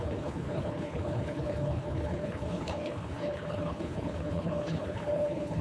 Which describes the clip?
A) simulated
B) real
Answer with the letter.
A